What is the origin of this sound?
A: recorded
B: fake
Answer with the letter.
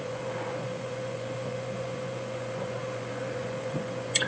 B